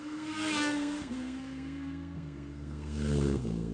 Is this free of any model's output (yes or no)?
no